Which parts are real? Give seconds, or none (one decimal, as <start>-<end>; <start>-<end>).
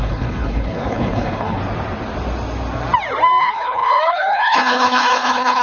1.6-3.4